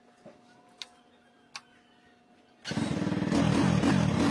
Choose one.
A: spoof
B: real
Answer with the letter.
B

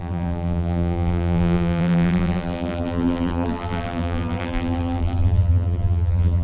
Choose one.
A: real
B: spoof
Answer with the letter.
B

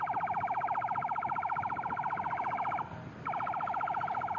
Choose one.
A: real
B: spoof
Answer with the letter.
A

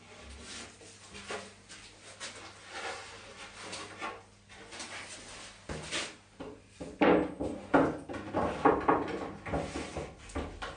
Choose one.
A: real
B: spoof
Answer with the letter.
A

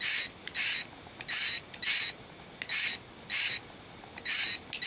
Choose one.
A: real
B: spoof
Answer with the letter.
A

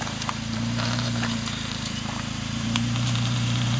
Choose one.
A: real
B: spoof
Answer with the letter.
B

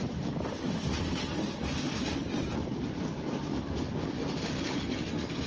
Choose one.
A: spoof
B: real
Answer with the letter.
B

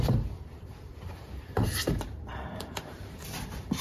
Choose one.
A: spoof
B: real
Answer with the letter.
A